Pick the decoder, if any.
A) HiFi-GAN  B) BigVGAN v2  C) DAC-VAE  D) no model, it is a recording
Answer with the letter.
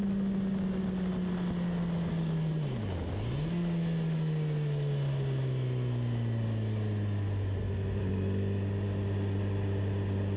D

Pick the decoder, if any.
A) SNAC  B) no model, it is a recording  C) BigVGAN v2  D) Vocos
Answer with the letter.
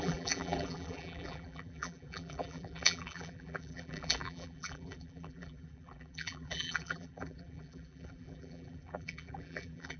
C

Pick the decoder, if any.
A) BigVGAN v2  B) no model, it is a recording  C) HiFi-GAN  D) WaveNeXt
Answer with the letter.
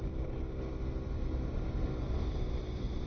B